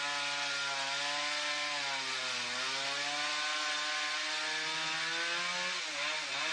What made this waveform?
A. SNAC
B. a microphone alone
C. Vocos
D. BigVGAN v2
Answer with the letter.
B